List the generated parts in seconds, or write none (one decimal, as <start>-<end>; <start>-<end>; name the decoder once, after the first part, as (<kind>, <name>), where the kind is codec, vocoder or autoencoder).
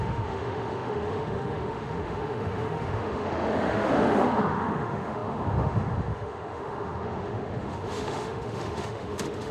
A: 0.0-9.5 (autoencoder, DAC-VAE)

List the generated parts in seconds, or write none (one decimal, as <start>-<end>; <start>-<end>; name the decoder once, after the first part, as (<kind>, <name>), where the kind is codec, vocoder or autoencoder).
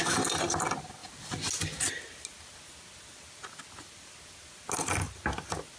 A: none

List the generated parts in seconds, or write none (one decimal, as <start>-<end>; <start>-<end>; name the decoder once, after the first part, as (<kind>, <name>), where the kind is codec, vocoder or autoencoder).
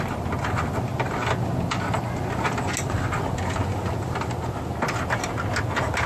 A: none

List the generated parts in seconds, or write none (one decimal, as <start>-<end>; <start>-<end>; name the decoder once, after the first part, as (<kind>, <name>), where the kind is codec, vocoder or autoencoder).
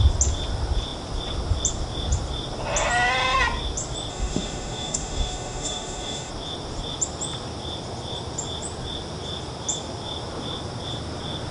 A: 4.1-6.3 (autoencoder, DAC-VAE)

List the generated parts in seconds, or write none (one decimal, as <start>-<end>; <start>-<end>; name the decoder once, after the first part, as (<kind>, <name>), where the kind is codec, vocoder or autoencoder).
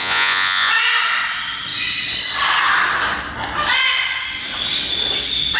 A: 0.0-0.7 (vocoder, Vocos)